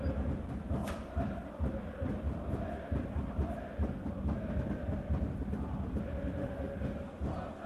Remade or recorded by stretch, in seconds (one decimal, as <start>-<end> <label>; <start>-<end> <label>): 0.0-6.4 recorded; 6.4-6.9 remade; 6.9-7.7 recorded